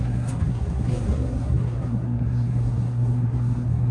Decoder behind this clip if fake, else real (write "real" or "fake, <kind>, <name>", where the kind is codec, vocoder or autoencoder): fake, codec, SNAC